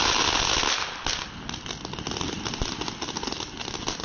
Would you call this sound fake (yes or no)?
no